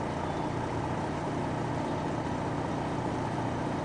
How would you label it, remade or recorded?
recorded